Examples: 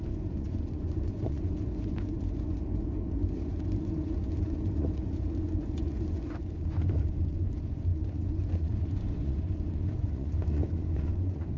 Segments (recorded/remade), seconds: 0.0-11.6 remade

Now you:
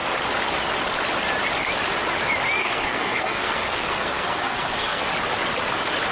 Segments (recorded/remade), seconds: 0.0-2.6 recorded; 2.6-5.0 remade; 5.0-6.1 recorded

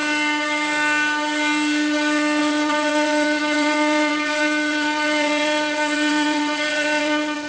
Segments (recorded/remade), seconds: 0.0-2.4 recorded; 2.4-7.5 remade

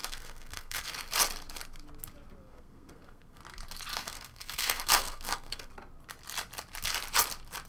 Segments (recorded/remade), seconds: 0.0-0.8 remade; 0.8-2.4 recorded; 2.4-3.4 remade; 3.4-3.9 recorded; 3.9-5.7 remade; 5.7-7.7 recorded

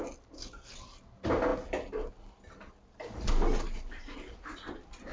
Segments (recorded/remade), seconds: 0.0-5.1 recorded

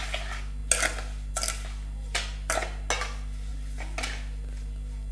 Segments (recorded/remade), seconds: 0.0-5.1 recorded

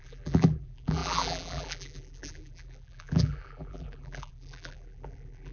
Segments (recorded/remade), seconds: 0.0-5.5 remade

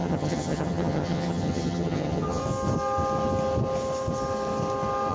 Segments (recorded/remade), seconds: 0.0-2.4 remade; 2.4-5.1 recorded